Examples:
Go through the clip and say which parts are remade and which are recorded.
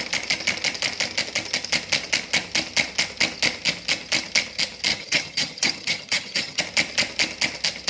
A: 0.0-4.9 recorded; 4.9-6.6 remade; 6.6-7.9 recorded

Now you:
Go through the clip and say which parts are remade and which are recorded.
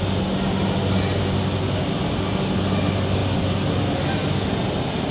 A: 0.0-5.1 recorded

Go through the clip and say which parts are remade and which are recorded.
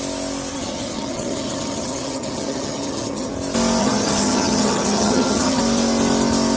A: 0.0-0.5 recorded; 0.5-3.3 remade; 3.3-3.8 recorded; 3.8-5.6 remade; 5.6-6.6 recorded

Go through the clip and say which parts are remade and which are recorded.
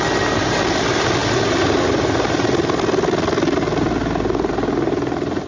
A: 0.0-5.5 recorded